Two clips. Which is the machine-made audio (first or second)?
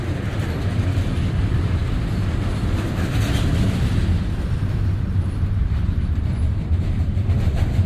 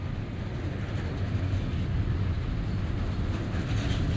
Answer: first